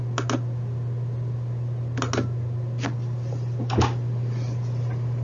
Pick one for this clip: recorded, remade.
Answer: recorded